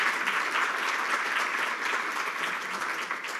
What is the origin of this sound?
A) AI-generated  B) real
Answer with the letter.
B